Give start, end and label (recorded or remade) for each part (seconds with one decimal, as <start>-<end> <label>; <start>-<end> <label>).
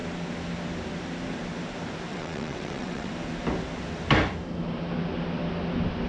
0.0-2.1 recorded; 2.1-3.1 remade; 3.1-6.1 recorded